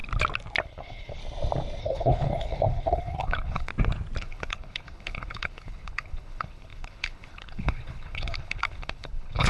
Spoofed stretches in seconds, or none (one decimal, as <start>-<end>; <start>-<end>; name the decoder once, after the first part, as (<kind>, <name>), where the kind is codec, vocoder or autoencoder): 0.6-1.2 (codec, HILCodec); 1.8-3.7; 4.2-9.5